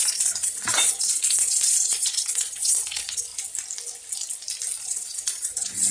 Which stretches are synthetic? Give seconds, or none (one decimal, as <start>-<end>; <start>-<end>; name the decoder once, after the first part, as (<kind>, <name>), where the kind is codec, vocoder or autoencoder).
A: 0.0-3.3 (vocoder, Vocos); 4.8-5.9